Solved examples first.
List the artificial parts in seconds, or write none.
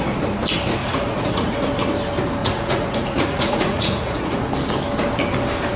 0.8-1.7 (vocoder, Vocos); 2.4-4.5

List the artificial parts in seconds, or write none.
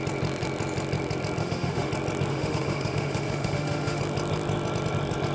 1.4-1.9 (autoencoder, DAC-VAE); 2.3-4.0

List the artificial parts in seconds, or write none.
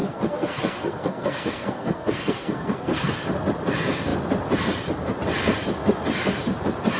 0.0-3.1 (codec, SNAC)